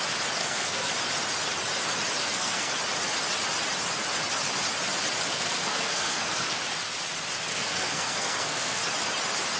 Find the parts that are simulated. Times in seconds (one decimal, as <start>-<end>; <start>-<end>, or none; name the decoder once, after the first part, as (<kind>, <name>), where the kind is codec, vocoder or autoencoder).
0.4-0.9 (codec, SNAC); 2.2-2.7; 5.3-6.6; 7.5-8.8